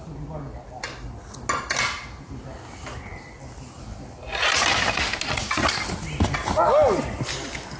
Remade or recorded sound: recorded